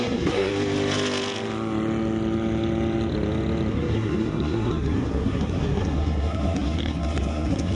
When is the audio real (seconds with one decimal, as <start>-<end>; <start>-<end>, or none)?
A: 0.5-3.7